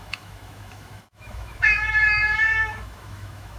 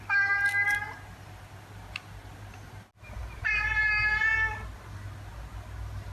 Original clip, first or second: second